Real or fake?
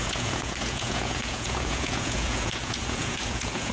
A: fake